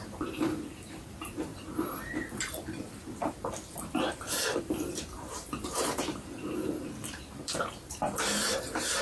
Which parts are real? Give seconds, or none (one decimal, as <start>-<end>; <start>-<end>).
1.5-4.6